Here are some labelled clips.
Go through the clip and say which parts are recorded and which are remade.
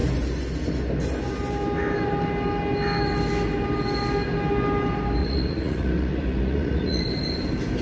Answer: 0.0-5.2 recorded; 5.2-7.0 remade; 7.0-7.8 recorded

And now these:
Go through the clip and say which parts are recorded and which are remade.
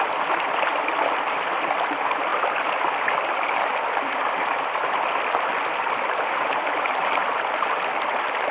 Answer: 0.0-8.5 recorded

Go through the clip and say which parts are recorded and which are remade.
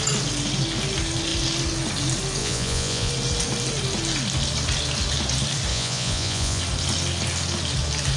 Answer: 0.0-2.4 recorded; 2.4-3.1 remade; 3.1-5.7 recorded; 5.7-6.6 remade; 6.6-8.2 recorded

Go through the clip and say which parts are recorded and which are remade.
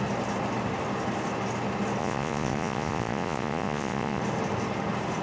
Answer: 0.0-2.0 recorded; 2.0-4.2 remade; 4.2-5.2 recorded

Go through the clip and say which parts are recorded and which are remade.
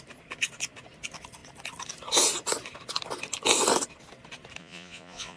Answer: 0.0-4.6 recorded; 4.6-5.4 remade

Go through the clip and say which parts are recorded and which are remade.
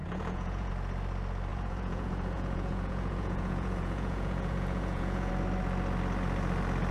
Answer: 0.0-0.7 remade; 0.7-1.5 recorded; 1.5-5.3 remade; 5.3-6.9 recorded